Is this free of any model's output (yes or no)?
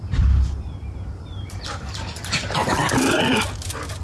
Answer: yes